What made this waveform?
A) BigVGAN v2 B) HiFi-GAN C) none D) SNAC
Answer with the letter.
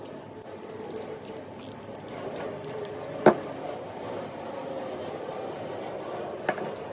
C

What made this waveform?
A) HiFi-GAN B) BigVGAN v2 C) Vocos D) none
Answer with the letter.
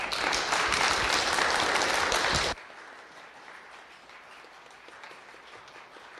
D